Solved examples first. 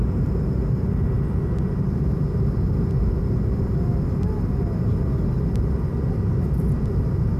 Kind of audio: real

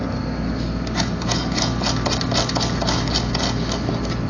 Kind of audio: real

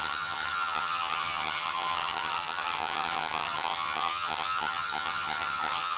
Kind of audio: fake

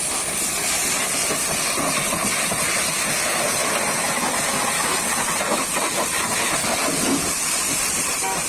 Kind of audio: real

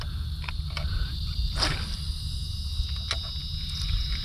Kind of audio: real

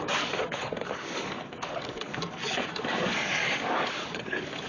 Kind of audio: fake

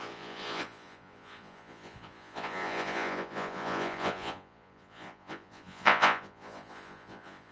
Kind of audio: fake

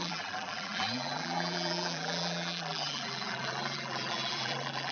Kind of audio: fake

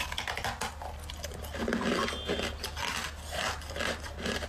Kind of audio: real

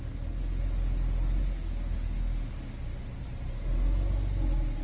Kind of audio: real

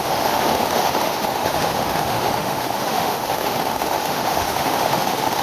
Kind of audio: fake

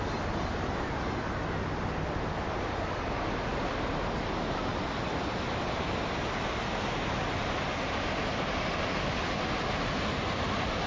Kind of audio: real